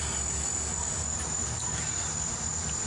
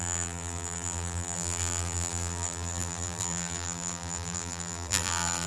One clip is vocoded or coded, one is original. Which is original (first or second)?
first